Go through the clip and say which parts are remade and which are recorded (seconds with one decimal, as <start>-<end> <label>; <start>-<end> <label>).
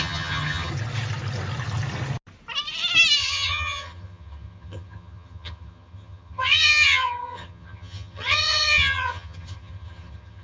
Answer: 0.0-0.7 remade; 0.7-3.2 recorded; 3.2-10.4 remade